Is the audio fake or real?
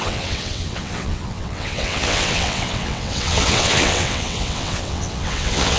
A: fake